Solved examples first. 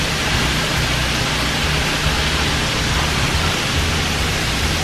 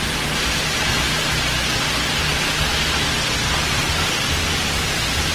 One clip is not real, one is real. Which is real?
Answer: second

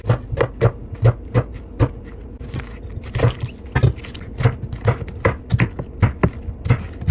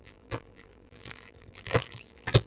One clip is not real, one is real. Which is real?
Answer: first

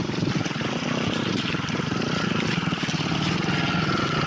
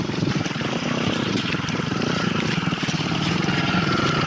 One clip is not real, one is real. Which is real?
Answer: first